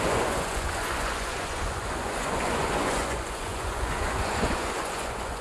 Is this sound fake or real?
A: fake